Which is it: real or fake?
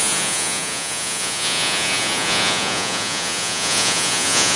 fake